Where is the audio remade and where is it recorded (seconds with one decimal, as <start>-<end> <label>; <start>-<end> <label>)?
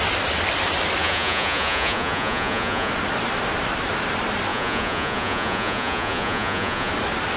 0.0-1.0 recorded; 1.0-2.9 remade; 2.9-4.5 recorded; 4.5-6.9 remade; 6.9-7.4 recorded